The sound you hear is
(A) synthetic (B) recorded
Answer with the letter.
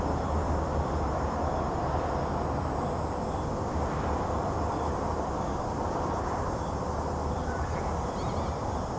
B